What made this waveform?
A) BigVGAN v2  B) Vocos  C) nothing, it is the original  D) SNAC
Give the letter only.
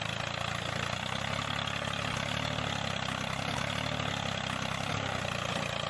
C